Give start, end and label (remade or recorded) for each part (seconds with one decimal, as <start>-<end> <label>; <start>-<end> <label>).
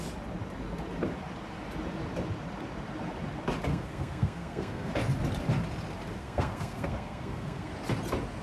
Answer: 0.0-3.7 recorded; 3.7-4.9 remade; 4.9-6.2 recorded; 6.2-7.7 remade; 7.7-8.4 recorded